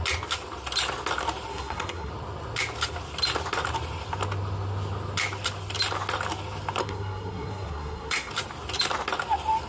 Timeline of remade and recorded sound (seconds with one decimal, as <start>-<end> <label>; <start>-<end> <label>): 0.0-1.5 recorded; 1.5-2.1 remade; 2.1-6.8 recorded; 6.8-8.3 remade; 8.3-9.7 recorded